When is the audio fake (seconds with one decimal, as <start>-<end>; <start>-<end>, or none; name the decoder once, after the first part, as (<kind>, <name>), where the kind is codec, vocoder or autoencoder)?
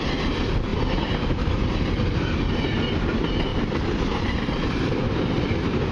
3.5-4.9 (vocoder, BigVGAN v2)